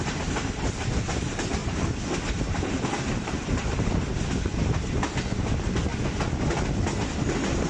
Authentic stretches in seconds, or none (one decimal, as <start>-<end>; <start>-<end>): 1.6-2.3; 4.1-4.7; 5.9-7.7